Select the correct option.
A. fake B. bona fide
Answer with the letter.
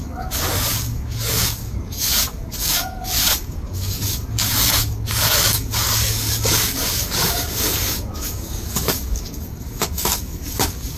A